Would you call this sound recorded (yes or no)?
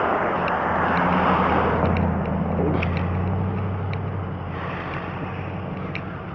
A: yes